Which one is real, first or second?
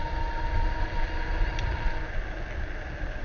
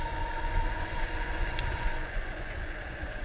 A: first